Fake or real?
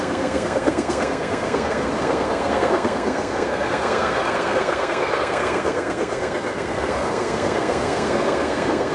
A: fake